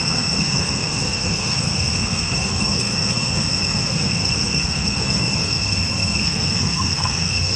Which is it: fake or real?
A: fake